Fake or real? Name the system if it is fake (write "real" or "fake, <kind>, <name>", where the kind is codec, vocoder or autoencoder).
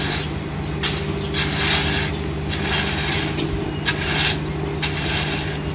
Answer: real